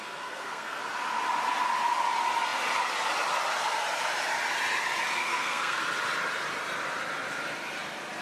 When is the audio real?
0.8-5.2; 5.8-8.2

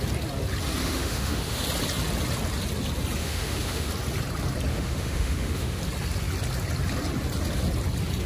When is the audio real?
0.0-0.8; 1.6-3.2; 3.9-4.7; 5.8-8.3

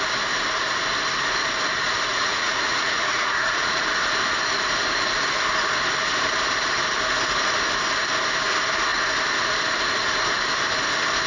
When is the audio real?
0.0-2.1; 3.9-11.3

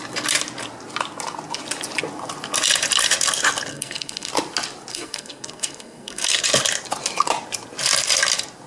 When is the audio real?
0.0-3.7; 4.3-4.9; 6.4-8.7